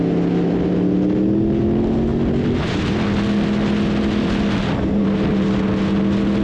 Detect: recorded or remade recorded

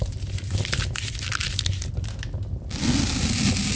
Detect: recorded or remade recorded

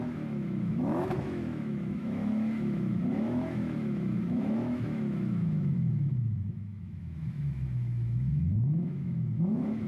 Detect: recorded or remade remade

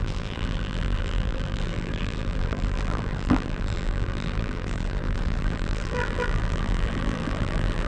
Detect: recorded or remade remade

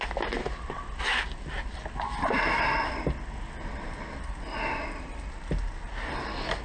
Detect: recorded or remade recorded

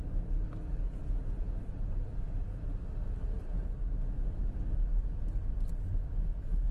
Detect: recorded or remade recorded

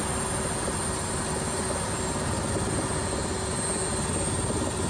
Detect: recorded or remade recorded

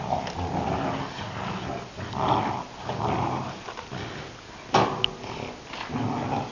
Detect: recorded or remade recorded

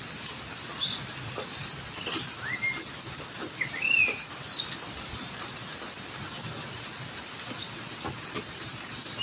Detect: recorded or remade recorded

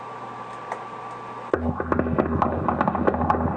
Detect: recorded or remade recorded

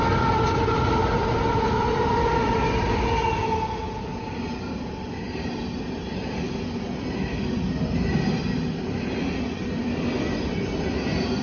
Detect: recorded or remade recorded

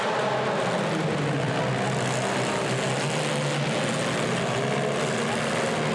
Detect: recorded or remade recorded